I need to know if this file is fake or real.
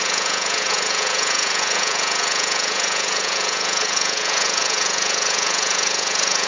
fake